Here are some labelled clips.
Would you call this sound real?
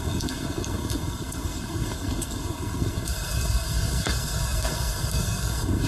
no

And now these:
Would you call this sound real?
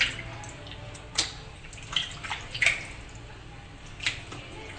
yes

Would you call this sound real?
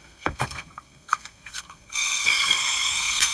no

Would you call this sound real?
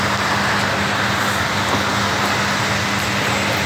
yes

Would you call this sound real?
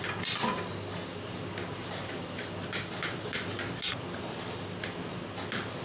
yes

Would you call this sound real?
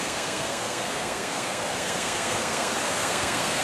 no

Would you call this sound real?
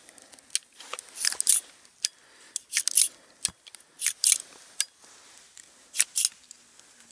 yes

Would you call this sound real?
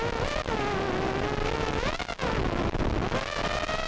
yes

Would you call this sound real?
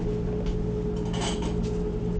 yes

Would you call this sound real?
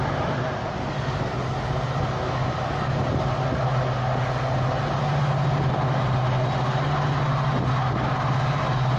yes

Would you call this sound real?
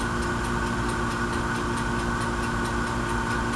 yes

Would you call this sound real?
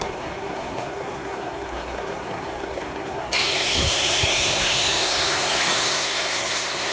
no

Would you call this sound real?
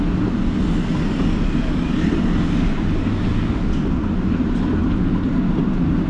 yes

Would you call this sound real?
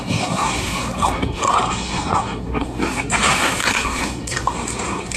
no